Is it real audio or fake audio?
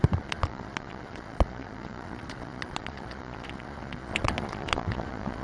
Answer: fake